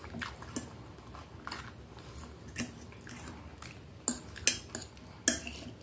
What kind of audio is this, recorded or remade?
recorded